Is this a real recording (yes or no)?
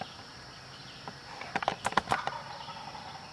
yes